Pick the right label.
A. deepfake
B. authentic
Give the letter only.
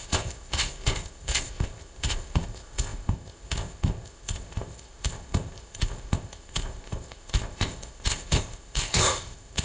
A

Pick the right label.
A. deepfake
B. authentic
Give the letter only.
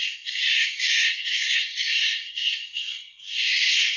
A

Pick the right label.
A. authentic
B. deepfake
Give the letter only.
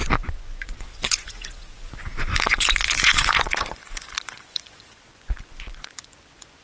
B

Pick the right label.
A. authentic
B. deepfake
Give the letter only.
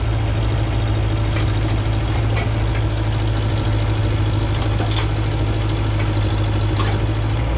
A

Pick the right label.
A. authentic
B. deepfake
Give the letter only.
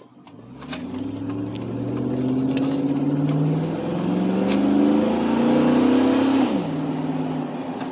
A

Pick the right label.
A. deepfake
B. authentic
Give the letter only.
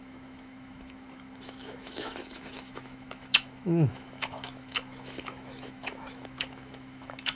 A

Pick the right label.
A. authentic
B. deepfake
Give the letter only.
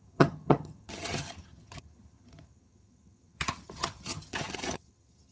B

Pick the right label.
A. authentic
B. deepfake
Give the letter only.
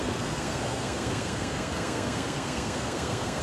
B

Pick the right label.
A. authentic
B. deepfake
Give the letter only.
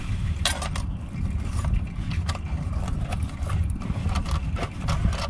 A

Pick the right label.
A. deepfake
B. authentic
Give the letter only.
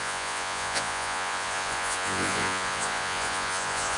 A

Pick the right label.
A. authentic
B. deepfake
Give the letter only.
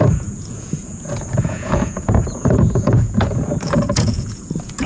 B